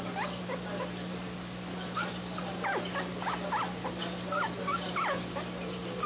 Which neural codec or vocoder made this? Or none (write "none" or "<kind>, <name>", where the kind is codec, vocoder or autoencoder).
none